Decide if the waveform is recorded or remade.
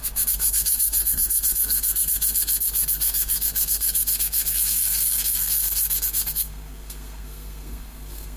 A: remade